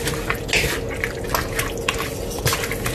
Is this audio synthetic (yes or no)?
no